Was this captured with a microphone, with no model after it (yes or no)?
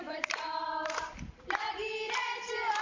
no